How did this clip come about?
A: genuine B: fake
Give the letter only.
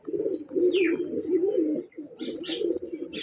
A